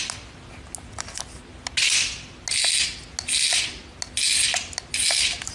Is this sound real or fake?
real